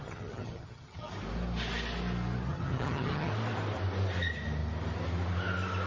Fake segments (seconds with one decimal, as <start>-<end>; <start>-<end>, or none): 0.0-1.1; 2.5-3.3